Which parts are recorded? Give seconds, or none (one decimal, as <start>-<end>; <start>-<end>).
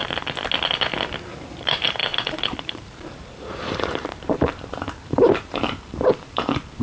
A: 0.0-1.0